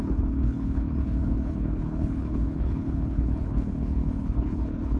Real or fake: fake